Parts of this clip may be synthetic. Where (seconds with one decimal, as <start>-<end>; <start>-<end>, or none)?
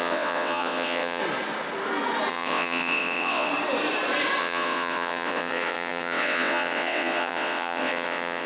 0.0-1.2; 2.3-3.5; 4.4-8.5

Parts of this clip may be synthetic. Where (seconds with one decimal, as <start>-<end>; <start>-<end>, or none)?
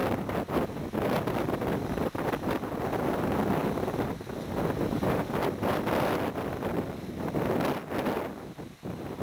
none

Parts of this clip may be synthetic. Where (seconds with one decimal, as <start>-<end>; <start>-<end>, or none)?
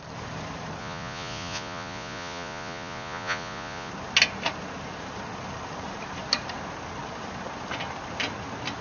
0.8-3.9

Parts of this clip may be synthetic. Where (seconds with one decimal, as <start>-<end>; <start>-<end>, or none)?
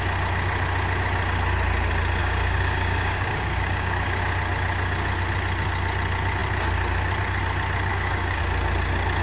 2.2-4.2; 7.9-8.4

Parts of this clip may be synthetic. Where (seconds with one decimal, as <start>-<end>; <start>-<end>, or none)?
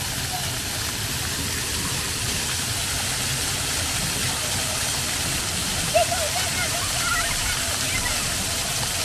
5.6-9.0